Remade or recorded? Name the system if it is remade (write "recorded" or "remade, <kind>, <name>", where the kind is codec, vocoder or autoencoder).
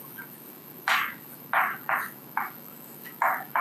remade, autoencoder, DAC-VAE